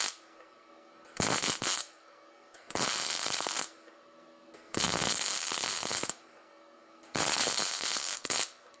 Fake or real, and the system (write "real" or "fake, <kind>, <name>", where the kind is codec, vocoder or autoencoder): fake, codec, SNAC